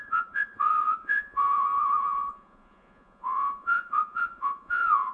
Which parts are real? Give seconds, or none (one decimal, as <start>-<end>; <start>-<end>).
none

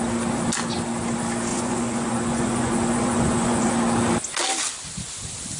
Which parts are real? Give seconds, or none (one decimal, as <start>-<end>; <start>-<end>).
0.0-1.5; 3.7-5.6